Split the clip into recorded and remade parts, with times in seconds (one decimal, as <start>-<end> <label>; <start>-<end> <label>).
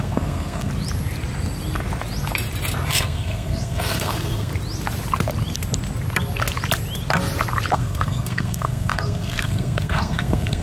0.0-0.7 remade; 0.7-2.9 recorded; 2.9-4.5 remade; 4.5-7.7 recorded; 7.7-10.6 remade